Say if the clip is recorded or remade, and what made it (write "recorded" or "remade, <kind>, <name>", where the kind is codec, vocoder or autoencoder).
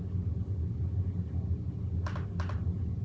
recorded